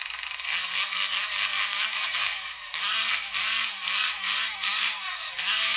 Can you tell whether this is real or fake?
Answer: fake